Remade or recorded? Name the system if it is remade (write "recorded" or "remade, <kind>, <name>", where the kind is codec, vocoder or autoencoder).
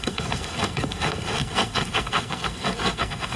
remade, codec, SNAC